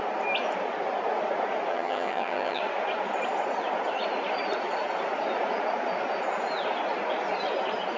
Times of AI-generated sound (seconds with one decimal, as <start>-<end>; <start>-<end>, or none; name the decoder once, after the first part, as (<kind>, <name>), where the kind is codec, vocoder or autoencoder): 1.7-2.6 (vocoder, HiFi-GAN)